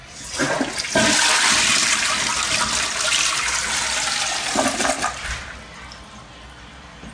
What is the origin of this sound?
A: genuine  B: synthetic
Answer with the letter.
A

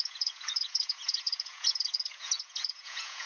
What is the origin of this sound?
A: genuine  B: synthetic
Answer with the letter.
B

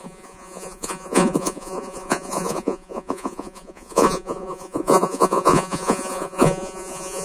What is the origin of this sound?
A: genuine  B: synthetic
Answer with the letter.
B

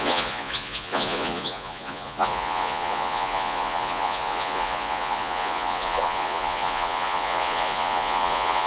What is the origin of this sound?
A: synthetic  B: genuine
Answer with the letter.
A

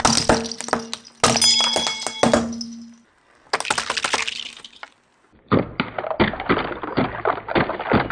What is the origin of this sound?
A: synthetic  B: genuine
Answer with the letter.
B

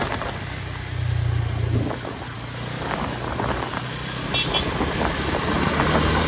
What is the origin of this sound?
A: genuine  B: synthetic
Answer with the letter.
A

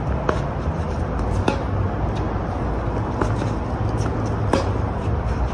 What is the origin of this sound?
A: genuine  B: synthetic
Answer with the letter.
A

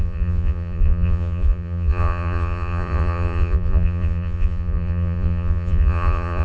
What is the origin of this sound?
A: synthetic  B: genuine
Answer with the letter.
A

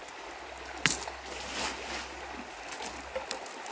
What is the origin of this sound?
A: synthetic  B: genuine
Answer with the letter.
B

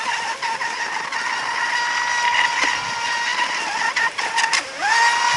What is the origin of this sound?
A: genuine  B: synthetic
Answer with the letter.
A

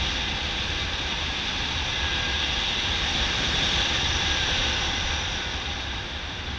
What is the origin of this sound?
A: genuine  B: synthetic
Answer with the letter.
A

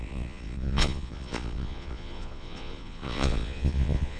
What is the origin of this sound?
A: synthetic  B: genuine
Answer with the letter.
A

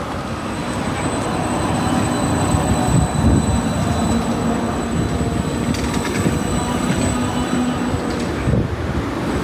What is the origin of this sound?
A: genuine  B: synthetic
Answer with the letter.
A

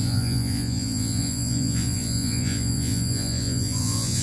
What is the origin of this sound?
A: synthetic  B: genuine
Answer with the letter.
A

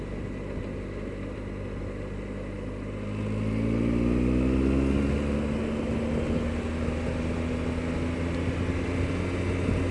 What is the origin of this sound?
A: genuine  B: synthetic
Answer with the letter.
A